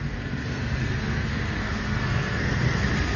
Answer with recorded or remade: remade